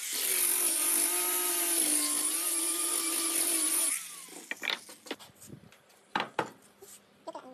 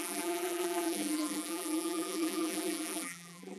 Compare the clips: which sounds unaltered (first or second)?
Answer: first